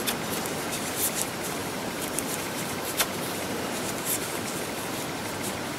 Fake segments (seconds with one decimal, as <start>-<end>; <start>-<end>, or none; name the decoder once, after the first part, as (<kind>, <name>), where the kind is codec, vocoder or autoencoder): 1.6-4.2 (vocoder, BigVGAN v2)